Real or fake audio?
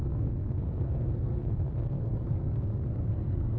fake